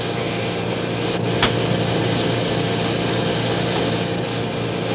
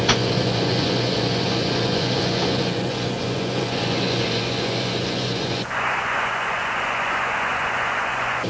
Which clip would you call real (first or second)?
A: first